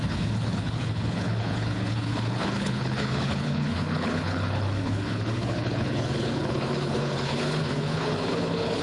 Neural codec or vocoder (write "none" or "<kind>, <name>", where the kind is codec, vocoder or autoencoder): codec, HILCodec